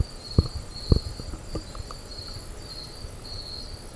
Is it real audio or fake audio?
real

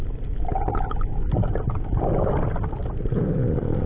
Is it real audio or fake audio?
real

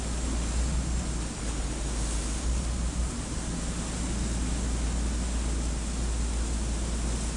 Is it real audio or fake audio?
real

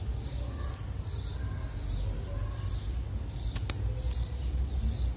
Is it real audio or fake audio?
real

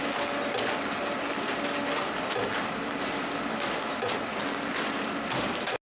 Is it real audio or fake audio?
real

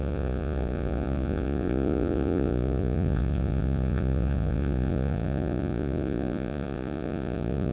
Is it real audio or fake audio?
fake